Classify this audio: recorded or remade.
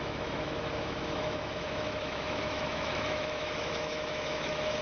remade